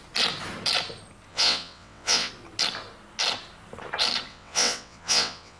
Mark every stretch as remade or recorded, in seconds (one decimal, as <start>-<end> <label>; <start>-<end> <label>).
0.0-1.3 recorded; 1.3-2.3 remade; 2.3-4.3 recorded; 4.3-5.6 remade